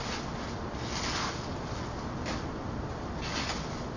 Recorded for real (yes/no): yes